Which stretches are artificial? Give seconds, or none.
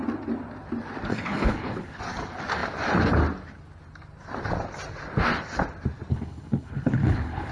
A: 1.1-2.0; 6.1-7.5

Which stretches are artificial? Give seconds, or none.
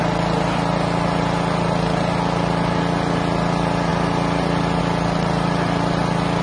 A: none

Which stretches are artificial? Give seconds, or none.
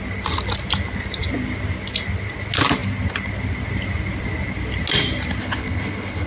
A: 5.4-6.3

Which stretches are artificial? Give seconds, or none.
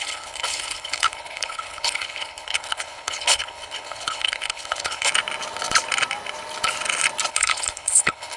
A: 0.0-5.1; 7.3-8.4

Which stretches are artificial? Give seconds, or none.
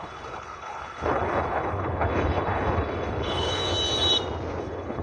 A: 0.0-3.6; 4.6-5.0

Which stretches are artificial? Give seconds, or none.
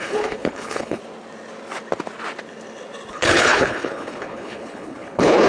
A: 0.0-1.0; 3.1-5.5